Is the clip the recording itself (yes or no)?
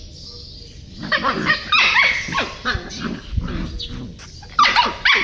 yes